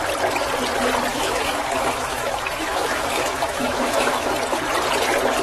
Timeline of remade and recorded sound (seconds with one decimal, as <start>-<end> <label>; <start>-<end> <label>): 0.0-1.1 recorded; 1.1-4.3 remade; 4.3-5.4 recorded